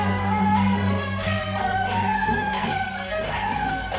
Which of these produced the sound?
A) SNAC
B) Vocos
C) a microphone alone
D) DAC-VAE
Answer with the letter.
A